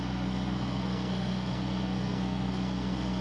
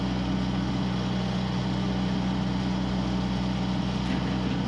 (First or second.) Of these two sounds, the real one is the second